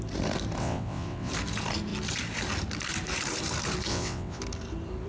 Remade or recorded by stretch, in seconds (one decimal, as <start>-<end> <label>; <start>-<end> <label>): 0.0-0.6 recorded; 0.6-1.3 remade; 1.3-3.9 recorded; 3.9-4.4 remade; 4.4-5.1 recorded